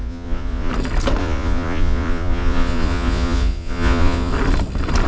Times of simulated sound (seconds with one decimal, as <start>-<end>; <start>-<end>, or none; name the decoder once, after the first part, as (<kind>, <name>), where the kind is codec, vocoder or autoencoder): 0.0-0.7 (vocoder, Vocos); 1.2-4.3